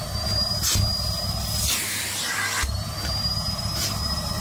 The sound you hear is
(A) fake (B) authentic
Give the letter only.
B